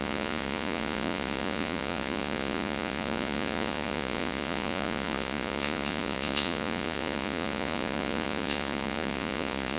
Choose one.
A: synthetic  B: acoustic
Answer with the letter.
A